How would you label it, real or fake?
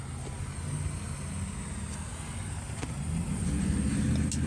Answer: real